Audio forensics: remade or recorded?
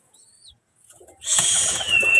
remade